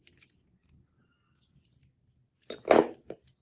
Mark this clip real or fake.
real